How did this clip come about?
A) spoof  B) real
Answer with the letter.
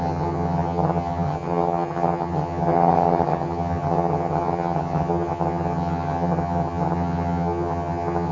A